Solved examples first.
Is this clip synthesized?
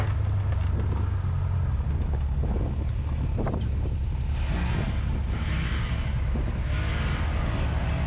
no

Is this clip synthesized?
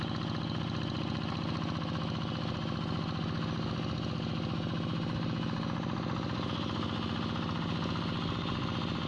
no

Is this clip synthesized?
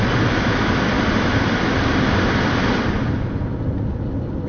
no